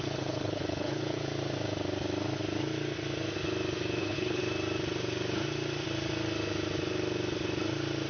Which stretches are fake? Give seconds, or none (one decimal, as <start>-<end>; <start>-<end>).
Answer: 0.0-1.2; 4.0-4.4